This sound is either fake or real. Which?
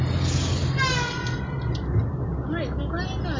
real